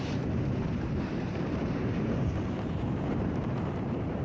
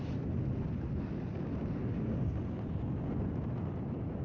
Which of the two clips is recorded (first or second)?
second